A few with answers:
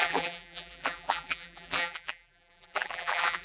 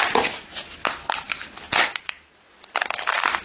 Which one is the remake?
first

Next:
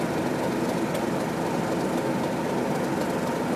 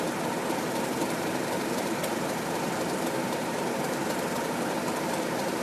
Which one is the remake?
second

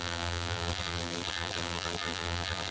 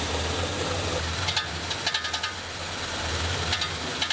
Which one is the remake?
first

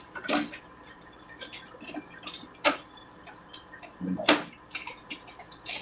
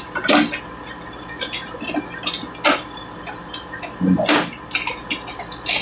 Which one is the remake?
first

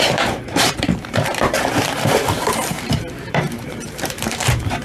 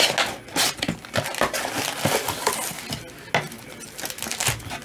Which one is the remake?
first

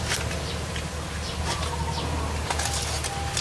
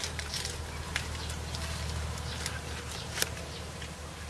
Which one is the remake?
second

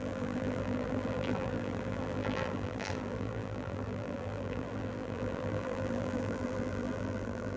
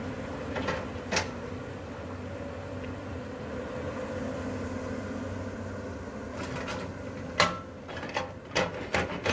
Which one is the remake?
first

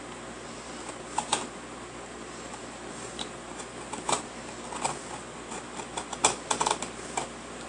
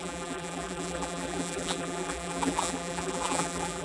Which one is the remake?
second